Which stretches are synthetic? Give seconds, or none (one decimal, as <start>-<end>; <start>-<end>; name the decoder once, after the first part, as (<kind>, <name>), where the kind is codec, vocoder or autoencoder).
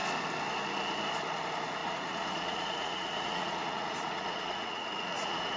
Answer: 1.8-5.6 (vocoder, Vocos)